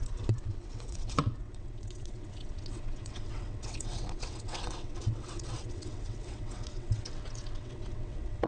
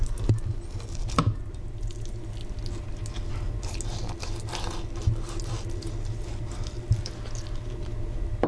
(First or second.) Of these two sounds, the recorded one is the second